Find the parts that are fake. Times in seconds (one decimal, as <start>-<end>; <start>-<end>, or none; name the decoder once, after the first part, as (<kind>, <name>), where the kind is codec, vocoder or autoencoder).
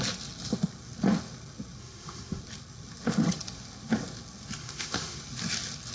1.8-2.4 (autoencoder, DAC-VAE); 4.6-5.2